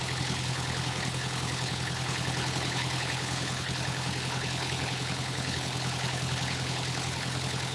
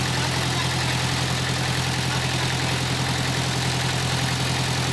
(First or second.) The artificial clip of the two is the first